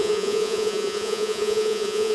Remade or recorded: remade